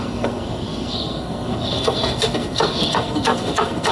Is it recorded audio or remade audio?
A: remade